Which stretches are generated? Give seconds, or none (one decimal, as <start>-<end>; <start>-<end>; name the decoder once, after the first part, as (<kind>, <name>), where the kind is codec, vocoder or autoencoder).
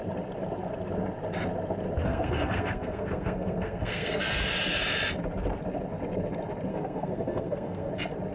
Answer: 2.1-4.2 (codec, SNAC); 6.7-7.9